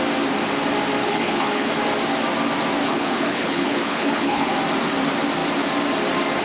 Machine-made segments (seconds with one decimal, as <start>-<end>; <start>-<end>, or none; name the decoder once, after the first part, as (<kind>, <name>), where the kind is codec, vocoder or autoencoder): 1.0-1.7 (codec, HILCodec); 2.8-4.5